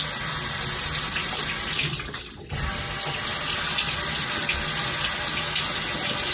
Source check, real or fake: real